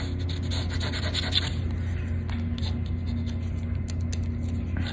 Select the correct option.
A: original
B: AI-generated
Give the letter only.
A